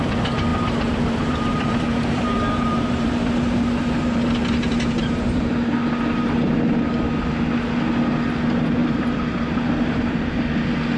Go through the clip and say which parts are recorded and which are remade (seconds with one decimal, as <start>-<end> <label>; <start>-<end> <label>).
0.0-0.5 recorded; 0.5-5.5 remade; 5.5-8.8 recorded; 8.8-10.4 remade; 10.4-11.0 recorded